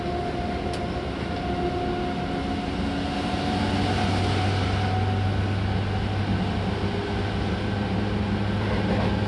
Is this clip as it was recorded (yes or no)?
yes